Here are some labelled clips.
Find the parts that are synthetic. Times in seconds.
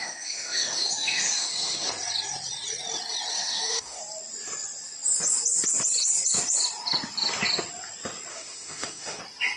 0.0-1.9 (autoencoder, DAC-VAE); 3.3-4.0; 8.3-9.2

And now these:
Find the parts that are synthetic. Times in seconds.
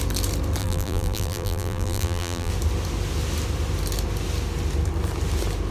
0.6-2.5 (vocoder, BigVGAN v2)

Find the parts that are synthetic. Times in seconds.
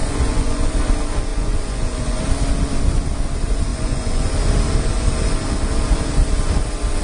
0.0-0.7 (vocoder, Vocos); 1.3-2.2; 3.7-4.3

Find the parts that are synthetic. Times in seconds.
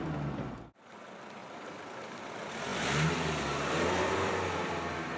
1.4-2.3 (vocoder, BigVGAN v2); 2.7-5.2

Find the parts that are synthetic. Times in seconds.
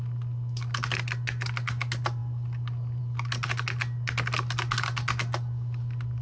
none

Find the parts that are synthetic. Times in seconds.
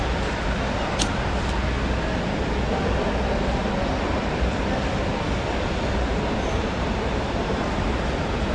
6.1-7.6 (vocoder, BigVGAN v2)